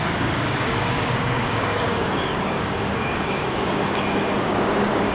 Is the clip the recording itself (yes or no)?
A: no